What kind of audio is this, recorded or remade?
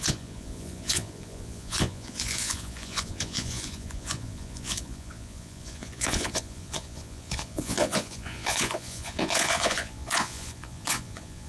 remade